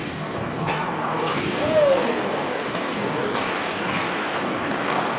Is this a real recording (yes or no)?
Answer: no